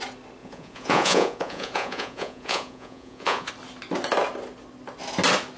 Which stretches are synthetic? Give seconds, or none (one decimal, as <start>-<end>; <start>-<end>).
0.4-3.5